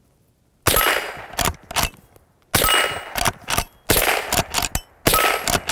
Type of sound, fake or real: real